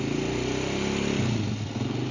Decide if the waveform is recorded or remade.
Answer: recorded